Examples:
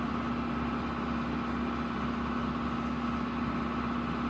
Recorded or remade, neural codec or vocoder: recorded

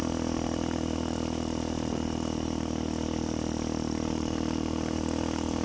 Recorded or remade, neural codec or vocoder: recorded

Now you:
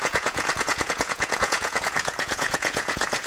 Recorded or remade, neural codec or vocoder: remade, vocoder, Vocos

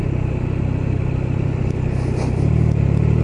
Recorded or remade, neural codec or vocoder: recorded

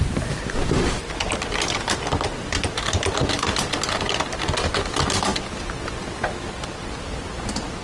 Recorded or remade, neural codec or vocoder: recorded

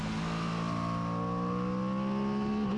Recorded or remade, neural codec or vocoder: recorded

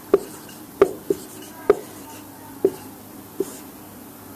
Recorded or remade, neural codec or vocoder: recorded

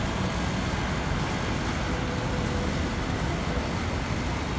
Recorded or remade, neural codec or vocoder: recorded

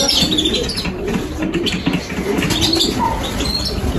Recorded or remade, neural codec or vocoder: recorded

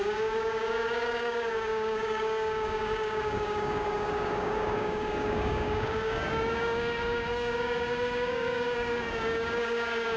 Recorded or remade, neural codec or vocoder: remade, codec, DAC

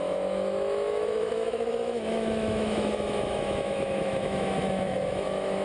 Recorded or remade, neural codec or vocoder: remade, autoencoder, DAC-VAE